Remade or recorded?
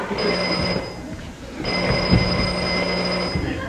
recorded